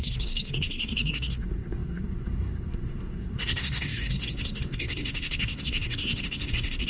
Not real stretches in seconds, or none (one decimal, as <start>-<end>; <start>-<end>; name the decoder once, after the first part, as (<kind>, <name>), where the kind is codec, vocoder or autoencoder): 0.0-6.9 (codec, SNAC)